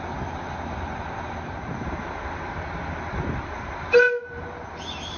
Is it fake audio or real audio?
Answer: real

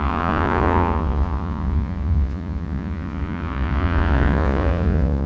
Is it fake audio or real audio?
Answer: fake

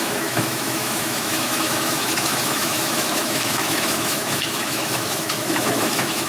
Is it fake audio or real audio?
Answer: fake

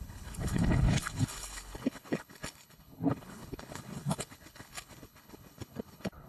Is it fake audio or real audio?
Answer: fake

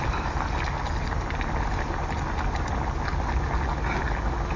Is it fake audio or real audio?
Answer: real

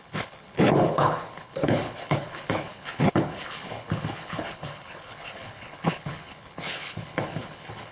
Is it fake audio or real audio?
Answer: fake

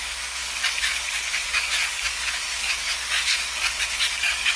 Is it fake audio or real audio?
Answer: fake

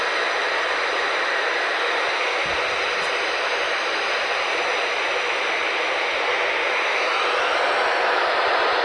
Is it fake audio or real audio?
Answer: real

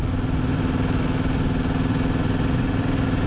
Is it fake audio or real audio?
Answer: real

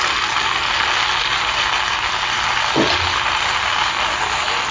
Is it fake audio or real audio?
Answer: real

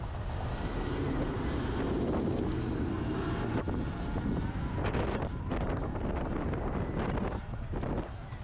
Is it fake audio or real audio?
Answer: real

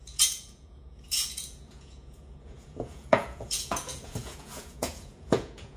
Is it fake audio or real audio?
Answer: fake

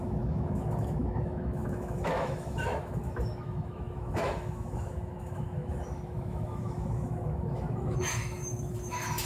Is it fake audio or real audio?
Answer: fake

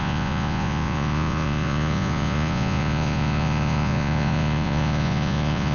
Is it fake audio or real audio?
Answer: fake